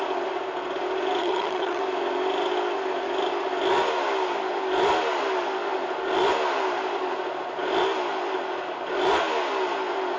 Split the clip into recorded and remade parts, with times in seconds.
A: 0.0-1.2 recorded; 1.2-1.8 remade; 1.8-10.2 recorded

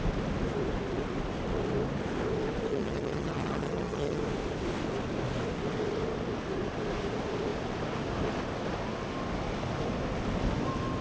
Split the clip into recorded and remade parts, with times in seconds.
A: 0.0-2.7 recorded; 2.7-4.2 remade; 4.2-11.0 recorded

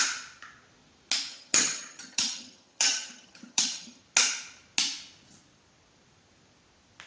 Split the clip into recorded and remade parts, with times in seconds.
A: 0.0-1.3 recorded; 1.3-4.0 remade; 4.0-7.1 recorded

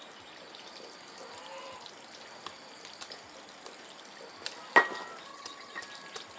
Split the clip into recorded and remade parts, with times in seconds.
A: 0.0-5.3 recorded; 5.3-5.8 remade; 5.8-6.4 recorded

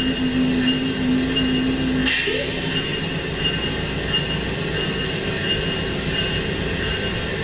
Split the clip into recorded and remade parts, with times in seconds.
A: 0.0-7.4 recorded

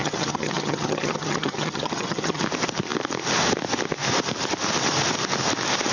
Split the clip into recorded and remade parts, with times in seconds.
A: 0.0-2.4 remade; 2.4-5.9 recorded

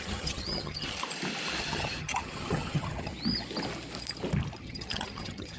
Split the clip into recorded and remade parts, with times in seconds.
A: 0.0-1.0 remade; 1.0-1.6 recorded; 1.6-3.1 remade; 3.1-4.6 recorded; 4.6-5.6 remade